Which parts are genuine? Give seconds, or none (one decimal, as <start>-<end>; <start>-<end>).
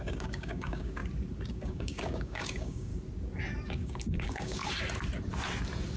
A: 1.0-1.5; 2.9-3.7; 4.6-6.0